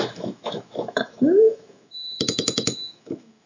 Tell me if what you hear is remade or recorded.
remade